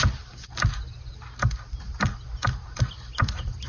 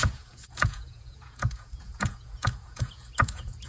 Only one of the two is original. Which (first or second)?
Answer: first